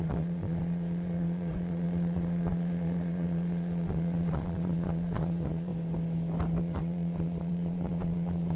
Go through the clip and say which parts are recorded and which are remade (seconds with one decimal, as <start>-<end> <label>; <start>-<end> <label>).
0.0-5.7 remade; 5.7-6.6 recorded; 6.6-8.6 remade